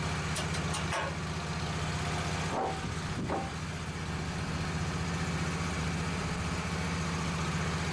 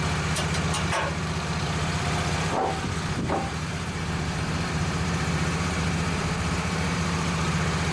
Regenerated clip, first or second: second